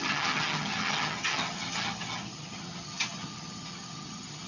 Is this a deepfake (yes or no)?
yes